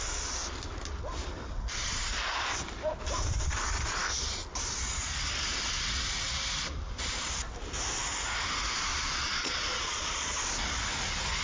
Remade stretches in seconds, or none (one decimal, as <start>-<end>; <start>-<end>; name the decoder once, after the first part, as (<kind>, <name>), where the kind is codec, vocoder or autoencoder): 8.9-10.5 (vocoder, Vocos)